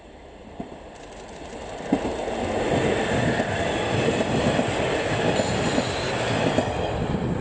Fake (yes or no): no